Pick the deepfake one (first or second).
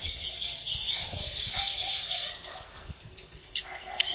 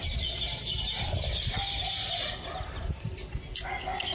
first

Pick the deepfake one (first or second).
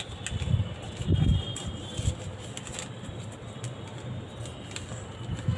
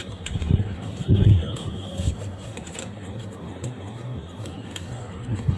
second